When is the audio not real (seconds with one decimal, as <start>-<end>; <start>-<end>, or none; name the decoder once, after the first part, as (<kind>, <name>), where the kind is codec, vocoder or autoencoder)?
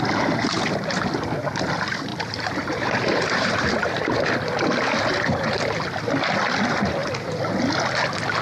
2.1-3.7 (vocoder, BigVGAN v2)